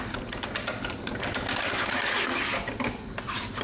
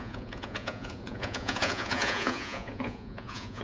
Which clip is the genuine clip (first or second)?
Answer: first